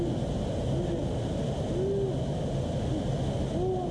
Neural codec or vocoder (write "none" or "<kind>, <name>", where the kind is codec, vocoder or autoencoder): none